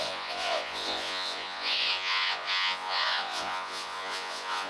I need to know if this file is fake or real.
fake